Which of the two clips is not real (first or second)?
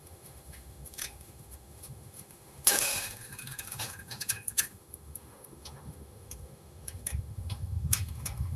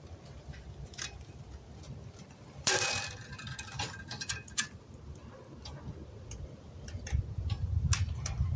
first